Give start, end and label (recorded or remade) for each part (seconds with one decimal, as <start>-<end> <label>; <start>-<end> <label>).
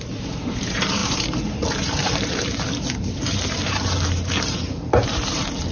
0.0-5.7 remade